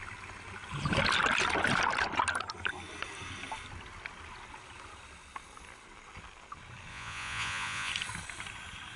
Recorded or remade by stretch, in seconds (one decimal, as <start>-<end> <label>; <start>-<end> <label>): 0.0-6.9 recorded; 6.9-7.9 remade; 7.9-9.0 recorded